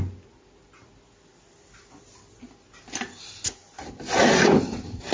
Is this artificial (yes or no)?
no